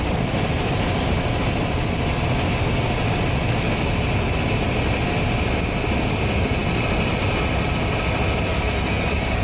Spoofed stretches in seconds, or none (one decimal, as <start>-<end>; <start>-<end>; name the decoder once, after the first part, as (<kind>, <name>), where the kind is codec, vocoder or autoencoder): 8.5-9.4 (codec, DAC)